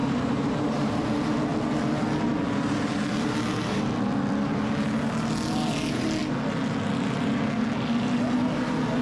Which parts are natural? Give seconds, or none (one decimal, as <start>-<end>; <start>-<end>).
1.1-9.0